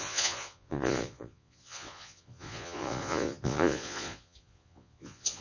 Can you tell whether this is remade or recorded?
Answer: remade